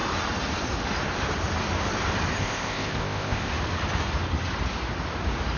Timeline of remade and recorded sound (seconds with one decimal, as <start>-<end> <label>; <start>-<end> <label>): 0.0-2.4 recorded; 2.4-3.5 remade; 3.5-5.6 recorded